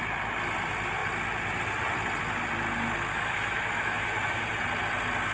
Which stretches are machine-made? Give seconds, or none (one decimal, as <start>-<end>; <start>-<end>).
3.1-4.4